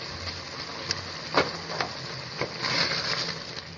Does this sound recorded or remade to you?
recorded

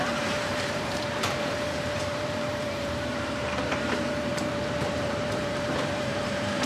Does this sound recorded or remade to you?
remade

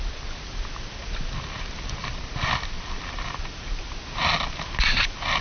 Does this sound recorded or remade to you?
recorded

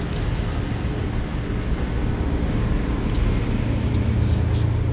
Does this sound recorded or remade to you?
recorded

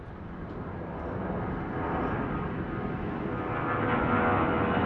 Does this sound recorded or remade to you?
recorded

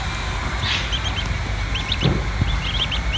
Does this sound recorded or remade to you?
recorded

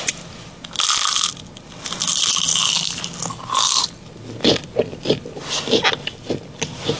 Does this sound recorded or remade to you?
recorded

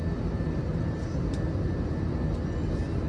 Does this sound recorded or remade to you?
recorded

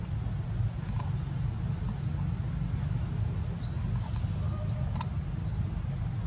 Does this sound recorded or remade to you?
recorded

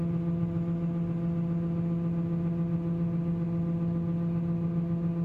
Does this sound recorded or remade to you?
recorded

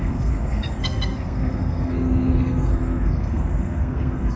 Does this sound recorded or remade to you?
remade